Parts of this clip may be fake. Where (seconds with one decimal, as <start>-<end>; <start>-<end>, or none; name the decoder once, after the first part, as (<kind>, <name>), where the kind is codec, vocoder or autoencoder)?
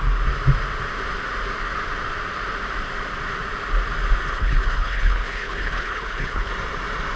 4.3-6.5 (codec, HILCodec)